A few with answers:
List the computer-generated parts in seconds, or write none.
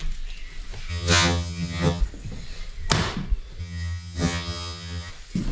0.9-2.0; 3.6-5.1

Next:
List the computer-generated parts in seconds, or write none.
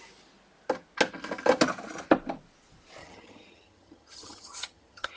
3.0-5.2